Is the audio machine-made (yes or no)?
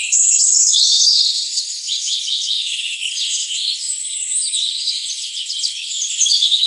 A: yes